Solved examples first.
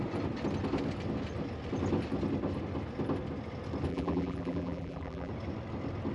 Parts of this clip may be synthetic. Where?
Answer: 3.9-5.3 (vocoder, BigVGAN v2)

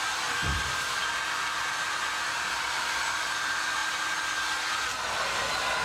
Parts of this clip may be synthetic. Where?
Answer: 0.0-3.8 (vocoder, BigVGAN v2)

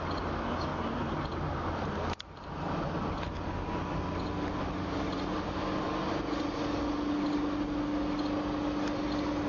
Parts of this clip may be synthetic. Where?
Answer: 0.7-2.8 (vocoder, BigVGAN v2)